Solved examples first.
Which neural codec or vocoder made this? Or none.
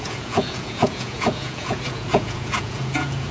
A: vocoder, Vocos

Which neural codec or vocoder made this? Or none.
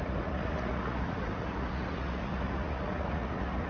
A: vocoder, Vocos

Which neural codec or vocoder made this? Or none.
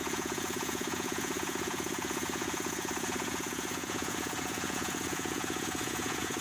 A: vocoder, Vocos